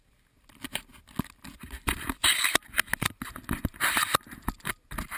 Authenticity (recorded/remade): recorded